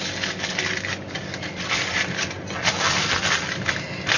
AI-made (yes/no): no